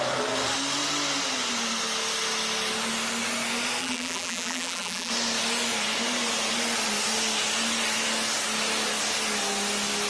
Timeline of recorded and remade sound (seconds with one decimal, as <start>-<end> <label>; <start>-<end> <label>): 0.0-3.8 recorded; 3.8-5.1 remade; 5.1-10.1 recorded